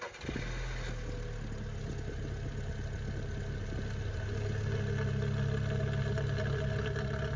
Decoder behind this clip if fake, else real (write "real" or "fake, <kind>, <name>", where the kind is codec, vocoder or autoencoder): real